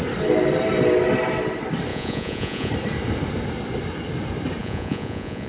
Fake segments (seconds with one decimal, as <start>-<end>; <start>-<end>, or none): 1.9-2.7; 4.6-5.5